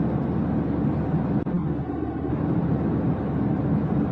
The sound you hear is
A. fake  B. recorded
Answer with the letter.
B